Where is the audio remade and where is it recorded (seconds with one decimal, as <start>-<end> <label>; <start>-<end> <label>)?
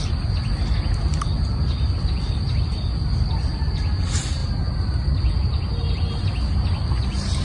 0.0-7.4 recorded